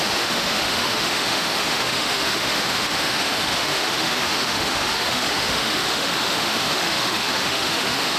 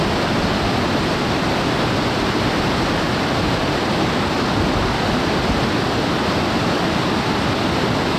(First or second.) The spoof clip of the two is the first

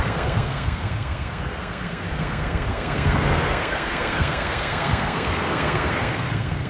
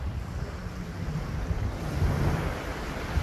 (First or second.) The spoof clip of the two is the first